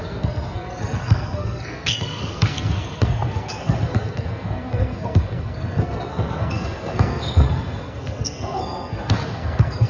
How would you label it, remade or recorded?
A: remade